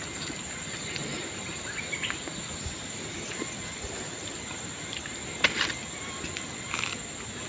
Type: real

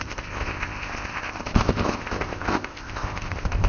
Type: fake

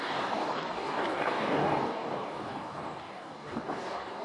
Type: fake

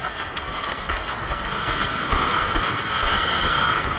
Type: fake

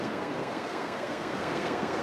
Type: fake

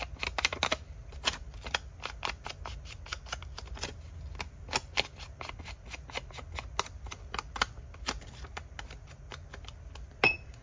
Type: real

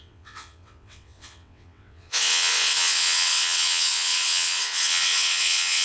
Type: fake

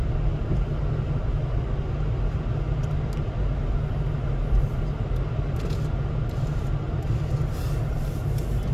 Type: real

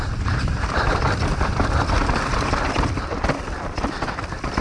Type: fake